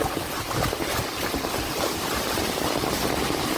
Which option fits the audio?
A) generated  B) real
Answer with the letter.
A